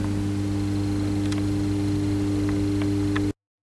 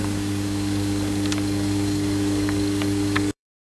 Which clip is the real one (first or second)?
first